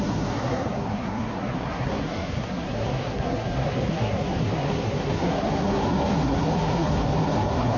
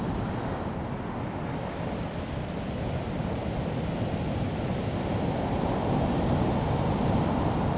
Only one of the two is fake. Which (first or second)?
first